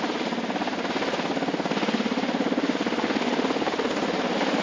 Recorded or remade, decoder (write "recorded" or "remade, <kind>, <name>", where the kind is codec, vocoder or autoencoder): recorded